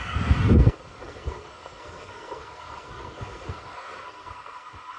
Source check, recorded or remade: remade